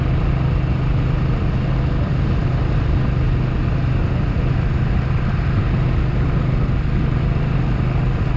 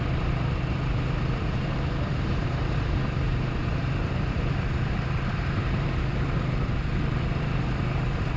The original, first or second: first